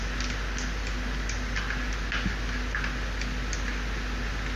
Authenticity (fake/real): real